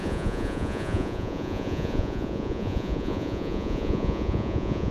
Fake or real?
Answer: fake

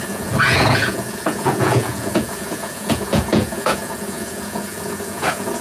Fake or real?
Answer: fake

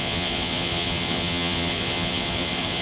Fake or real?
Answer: fake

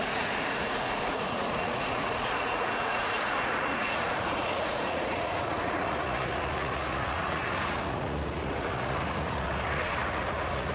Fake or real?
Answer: fake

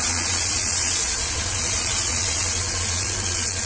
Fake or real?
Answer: fake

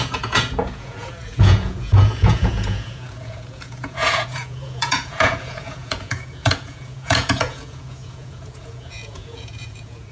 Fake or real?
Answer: fake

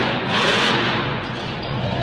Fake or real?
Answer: fake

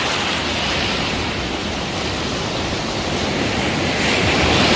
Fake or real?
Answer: real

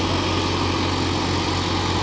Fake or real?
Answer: real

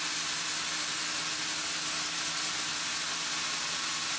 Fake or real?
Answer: real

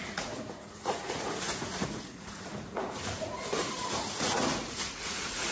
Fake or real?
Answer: fake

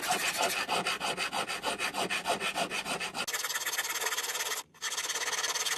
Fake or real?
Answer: real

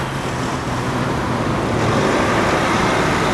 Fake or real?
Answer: real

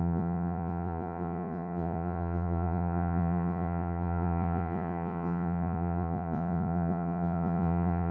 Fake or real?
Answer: fake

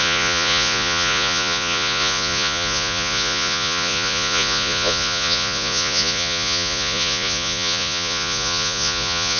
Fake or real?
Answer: fake